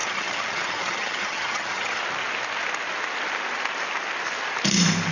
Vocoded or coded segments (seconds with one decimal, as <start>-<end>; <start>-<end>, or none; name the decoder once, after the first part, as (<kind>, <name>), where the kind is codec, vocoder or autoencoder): 0.0-2.0 (vocoder, HiFi-GAN)